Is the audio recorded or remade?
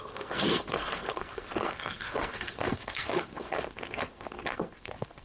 remade